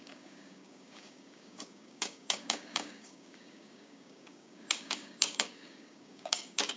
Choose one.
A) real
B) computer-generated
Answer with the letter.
B